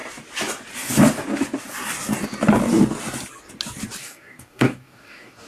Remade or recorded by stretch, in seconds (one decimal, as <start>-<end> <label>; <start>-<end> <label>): 0.0-4.0 recorded; 4.0-5.5 remade